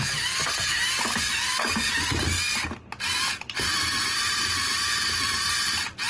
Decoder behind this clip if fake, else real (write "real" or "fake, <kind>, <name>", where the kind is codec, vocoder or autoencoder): real